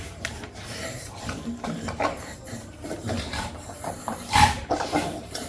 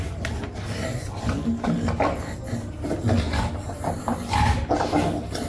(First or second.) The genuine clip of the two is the second